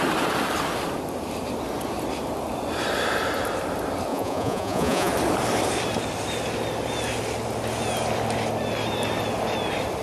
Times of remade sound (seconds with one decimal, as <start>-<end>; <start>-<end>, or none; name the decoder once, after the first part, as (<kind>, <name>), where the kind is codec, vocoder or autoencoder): 4.1-5.1 (vocoder, Vocos)